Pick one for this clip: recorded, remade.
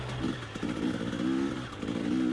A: recorded